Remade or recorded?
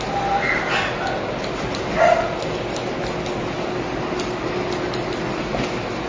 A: recorded